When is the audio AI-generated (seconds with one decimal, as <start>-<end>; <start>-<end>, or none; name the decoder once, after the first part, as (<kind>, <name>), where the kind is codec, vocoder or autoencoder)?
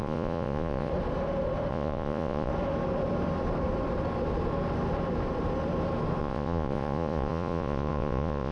0.0-0.9 (vocoder, Vocos); 1.7-2.5; 6.2-8.5